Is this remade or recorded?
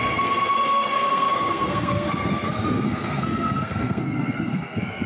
remade